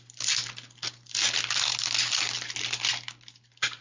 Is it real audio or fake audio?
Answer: real